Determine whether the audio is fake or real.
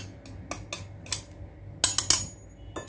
real